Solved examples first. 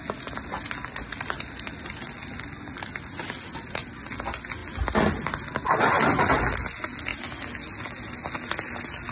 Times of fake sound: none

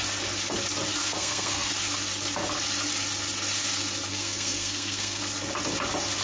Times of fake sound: 1.0-1.7 (codec, SNAC); 4.1-5.2

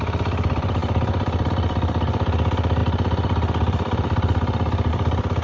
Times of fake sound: none

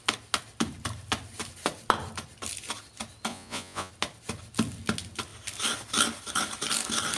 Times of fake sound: 3.3-3.9 (vocoder, Vocos)

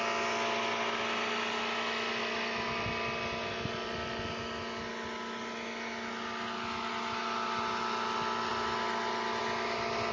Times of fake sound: none

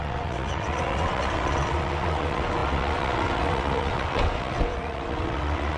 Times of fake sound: 0.0-5.8 (vocoder, WaveNeXt)

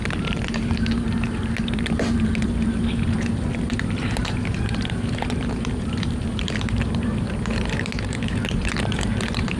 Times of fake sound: 0.5-9.6 (vocoder, BigVGAN v2)